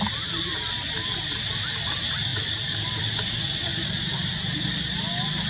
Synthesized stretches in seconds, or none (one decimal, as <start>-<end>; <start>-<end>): none